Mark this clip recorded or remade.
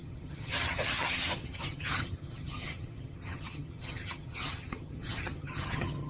remade